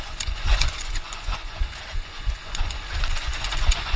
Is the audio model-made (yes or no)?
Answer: yes